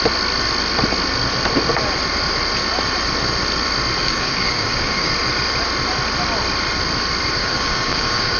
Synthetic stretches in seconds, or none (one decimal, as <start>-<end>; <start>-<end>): 4.0-5.1; 7.4-8.4